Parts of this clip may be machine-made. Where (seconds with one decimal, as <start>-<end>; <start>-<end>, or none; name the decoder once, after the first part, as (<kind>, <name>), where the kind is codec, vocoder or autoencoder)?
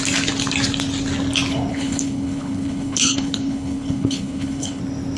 1.7-4.8 (codec, HILCodec)